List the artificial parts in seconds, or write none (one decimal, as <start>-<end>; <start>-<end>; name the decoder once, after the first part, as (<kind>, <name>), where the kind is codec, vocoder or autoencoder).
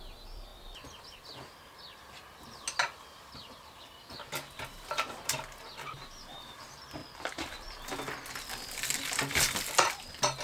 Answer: none